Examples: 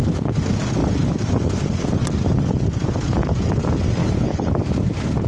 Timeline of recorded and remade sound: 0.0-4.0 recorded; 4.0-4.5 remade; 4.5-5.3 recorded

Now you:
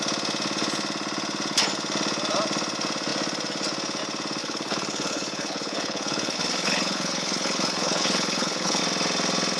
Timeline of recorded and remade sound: 0.0-4.4 recorded; 4.4-8.8 remade; 8.8-9.6 recorded

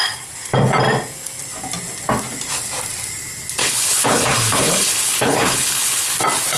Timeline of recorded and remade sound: 0.0-3.6 recorded; 3.6-6.1 remade; 6.1-6.6 recorded

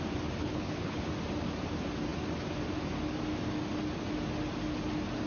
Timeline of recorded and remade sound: 0.0-0.4 recorded; 0.4-1.1 remade; 1.1-5.3 recorded

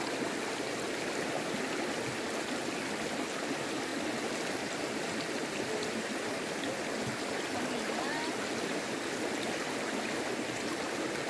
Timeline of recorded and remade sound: 0.0-11.3 recorded

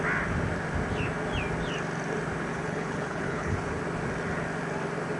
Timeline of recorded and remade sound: 0.0-2.5 recorded; 2.5-3.8 remade; 3.8-5.2 recorded

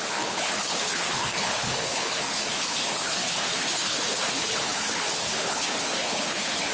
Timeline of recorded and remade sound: 0.0-6.7 remade